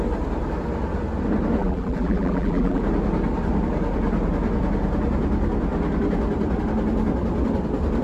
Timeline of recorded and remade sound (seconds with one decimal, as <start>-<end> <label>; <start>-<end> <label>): 0.0-1.6 recorded; 1.6-2.8 remade; 2.8-8.0 recorded